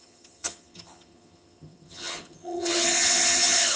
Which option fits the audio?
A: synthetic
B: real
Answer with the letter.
A